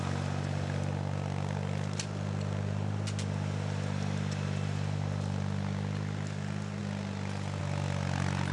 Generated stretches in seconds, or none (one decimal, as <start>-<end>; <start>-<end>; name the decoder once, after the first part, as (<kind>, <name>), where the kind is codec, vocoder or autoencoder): none

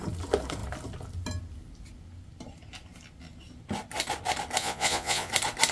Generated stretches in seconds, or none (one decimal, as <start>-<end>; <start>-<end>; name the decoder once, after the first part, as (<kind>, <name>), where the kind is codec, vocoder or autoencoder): 4.6-5.3 (vocoder, Vocos)

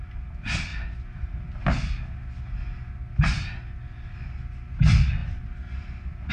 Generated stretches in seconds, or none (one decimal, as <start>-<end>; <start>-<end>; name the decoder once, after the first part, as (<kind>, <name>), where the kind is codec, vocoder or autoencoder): none

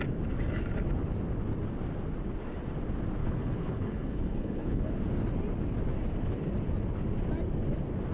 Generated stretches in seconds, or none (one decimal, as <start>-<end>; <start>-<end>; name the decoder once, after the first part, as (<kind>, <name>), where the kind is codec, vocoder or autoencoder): 3.2-4.9 (codec, HILCodec)

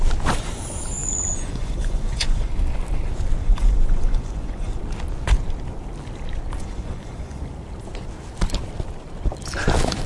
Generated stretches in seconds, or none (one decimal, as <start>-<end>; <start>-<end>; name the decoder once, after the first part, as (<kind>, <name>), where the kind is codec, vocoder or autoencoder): 1.0-2.5 (vocoder, Vocos); 3.4-4.8; 6.6-7.4

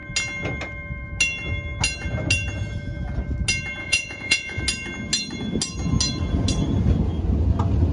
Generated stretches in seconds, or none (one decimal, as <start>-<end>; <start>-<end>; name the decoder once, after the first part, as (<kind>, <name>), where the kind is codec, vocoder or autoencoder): 3.8-4.6 (vocoder, Vocos)

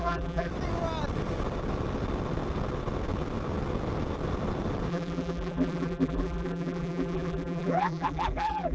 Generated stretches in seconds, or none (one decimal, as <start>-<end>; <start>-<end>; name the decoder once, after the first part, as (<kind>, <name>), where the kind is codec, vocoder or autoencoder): 0.0-0.5 (vocoder, BigVGAN v2); 4.9-8.7